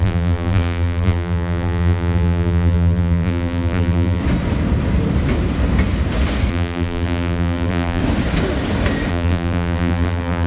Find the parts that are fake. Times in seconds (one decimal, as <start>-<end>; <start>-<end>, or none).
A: 0.0-4.2; 6.5-8.0; 9.1-10.5